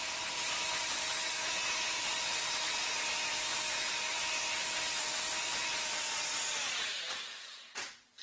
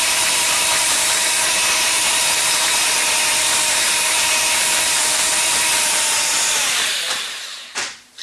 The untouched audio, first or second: first